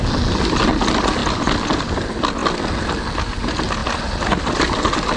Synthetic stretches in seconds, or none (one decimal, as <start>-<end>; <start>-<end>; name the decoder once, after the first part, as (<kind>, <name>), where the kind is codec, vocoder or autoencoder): none